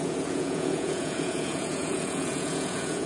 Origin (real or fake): fake